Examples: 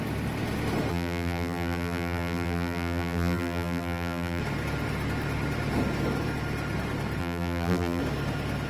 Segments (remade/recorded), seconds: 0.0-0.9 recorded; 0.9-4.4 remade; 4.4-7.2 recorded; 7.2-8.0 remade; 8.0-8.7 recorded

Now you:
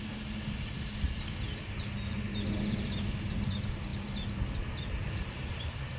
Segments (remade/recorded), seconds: 0.0-6.0 recorded

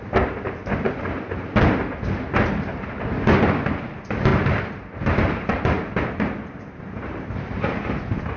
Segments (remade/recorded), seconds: 0.0-4.3 recorded; 4.3-7.2 remade; 7.2-8.4 recorded

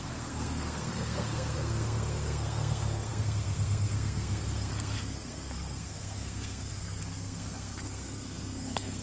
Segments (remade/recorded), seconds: 0.0-9.0 remade

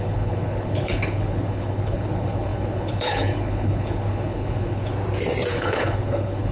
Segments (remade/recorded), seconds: 0.0-4.9 remade; 4.9-5.5 recorded; 5.5-6.5 remade

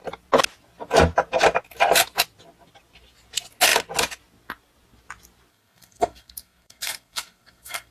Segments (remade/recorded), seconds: 0.0-5.5 recorded; 5.5-7.9 remade